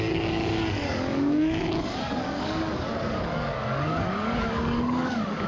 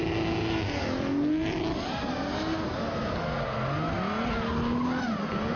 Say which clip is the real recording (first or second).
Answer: second